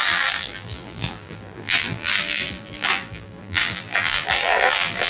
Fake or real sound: fake